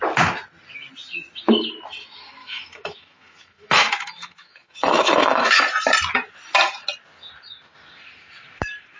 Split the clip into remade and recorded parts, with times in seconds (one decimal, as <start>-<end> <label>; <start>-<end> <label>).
0.0-2.4 recorded; 2.4-5.6 remade; 5.6-9.0 recorded